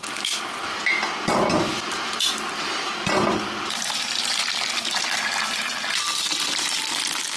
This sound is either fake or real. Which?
real